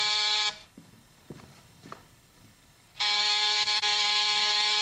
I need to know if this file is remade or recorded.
remade